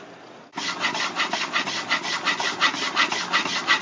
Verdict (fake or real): real